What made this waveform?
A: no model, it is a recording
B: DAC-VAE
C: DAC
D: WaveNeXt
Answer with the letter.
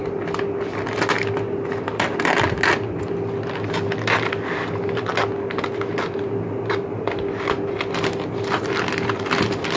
A